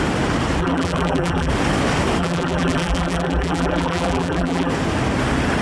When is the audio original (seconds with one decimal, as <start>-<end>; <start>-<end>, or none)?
0.0-0.6; 1.5-2.2; 4.7-5.6